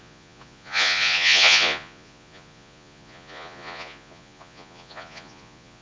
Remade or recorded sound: remade